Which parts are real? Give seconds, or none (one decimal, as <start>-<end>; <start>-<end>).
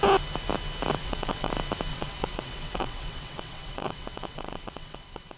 0.0-1.0; 1.5-1.9